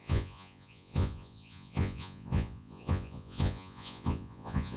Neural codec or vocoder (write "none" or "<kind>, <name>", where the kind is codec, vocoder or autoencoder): vocoder, Vocos